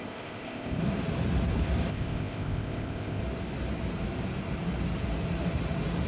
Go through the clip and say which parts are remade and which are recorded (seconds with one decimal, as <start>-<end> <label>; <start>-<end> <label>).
0.0-0.8 remade; 0.8-1.9 recorded; 1.9-3.2 remade; 3.2-6.1 recorded